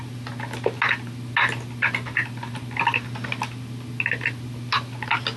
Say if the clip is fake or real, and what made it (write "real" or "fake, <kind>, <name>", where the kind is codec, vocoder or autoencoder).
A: real